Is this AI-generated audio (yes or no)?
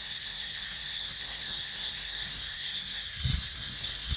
yes